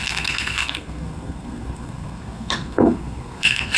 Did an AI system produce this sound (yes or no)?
yes